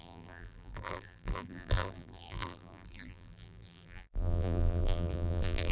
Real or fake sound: fake